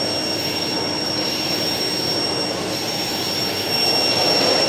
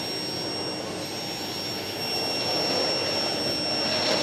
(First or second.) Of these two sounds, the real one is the second